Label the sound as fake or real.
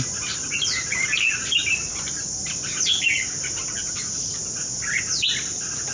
real